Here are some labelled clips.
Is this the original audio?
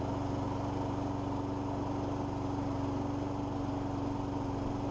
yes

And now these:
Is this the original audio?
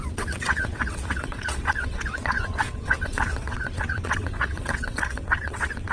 no